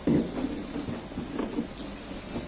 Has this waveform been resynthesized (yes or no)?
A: no